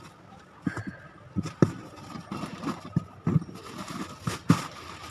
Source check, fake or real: real